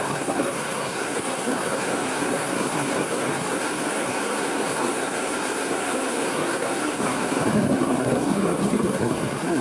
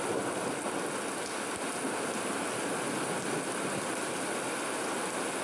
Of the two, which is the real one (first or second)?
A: second